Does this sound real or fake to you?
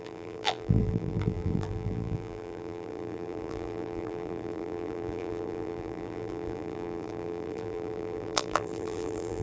fake